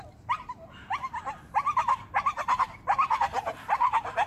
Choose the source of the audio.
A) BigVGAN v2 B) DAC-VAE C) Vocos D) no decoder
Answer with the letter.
D